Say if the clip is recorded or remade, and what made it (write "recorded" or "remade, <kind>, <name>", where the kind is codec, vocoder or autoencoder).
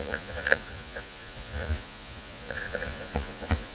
remade, vocoder, Vocos